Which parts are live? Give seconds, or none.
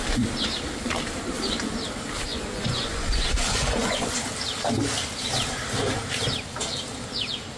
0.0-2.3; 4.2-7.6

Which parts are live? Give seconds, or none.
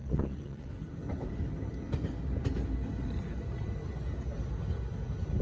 0.7-5.4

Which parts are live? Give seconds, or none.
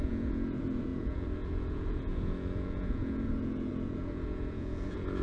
none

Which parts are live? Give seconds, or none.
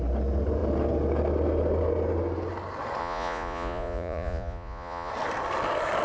0.0-3.0; 5.1-6.0